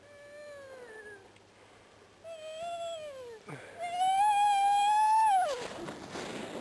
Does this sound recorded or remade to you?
remade